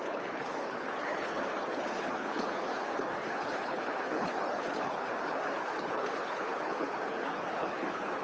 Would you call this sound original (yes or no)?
no